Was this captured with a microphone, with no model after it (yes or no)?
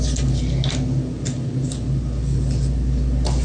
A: yes